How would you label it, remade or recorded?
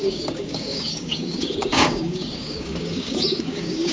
remade